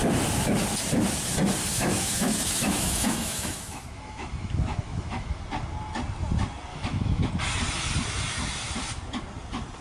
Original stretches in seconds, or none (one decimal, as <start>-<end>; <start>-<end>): 0.0-1.7; 5.4-6.7; 7.3-9.8